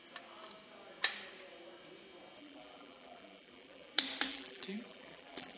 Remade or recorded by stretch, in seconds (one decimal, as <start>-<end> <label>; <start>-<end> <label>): 0.0-2.4 recorded; 2.4-3.9 remade; 3.9-4.3 recorded; 4.3-5.6 remade